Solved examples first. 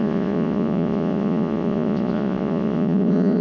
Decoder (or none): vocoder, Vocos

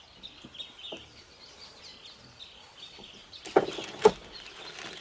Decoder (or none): none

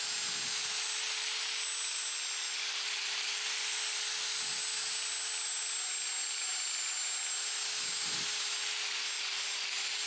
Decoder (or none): none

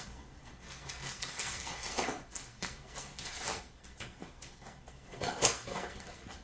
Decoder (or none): codec, SNAC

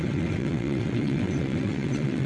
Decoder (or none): vocoder, WaveNeXt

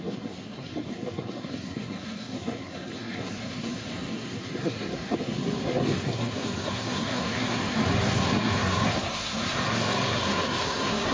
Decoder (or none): codec, SNAC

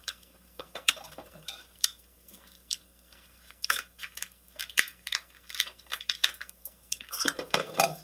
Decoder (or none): codec, SNAC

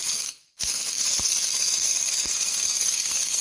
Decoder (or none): codec, SNAC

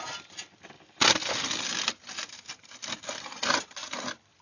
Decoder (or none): none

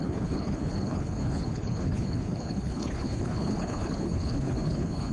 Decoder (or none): codec, HILCodec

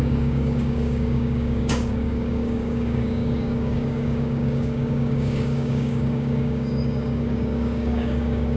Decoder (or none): codec, DAC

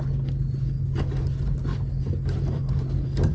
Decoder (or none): none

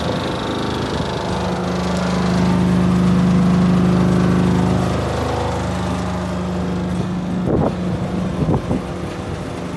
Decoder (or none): none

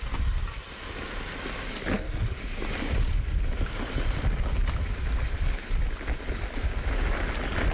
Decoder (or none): none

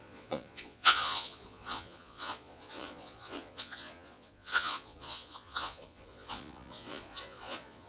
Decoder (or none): vocoder, Vocos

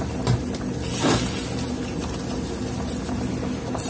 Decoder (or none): none